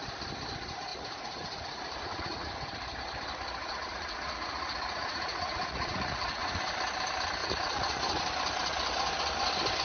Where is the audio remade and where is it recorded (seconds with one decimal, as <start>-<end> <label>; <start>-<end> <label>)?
0.0-0.9 recorded; 0.9-2.5 remade; 2.5-3.6 recorded; 3.6-6.6 remade; 6.6-7.4 recorded; 7.4-8.2 remade; 8.2-9.8 recorded